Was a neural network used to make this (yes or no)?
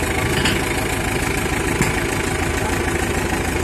no